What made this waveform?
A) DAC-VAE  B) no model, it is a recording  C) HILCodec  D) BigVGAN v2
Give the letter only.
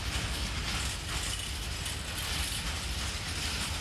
B